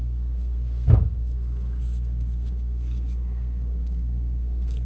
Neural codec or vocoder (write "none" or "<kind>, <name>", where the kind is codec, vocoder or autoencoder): codec, SNAC